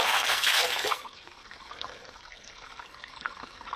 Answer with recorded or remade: remade